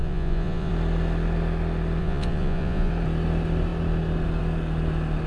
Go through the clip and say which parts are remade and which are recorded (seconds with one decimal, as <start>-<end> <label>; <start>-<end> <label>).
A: 0.0-0.7 remade; 0.7-2.0 recorded; 2.0-2.9 remade; 2.9-5.3 recorded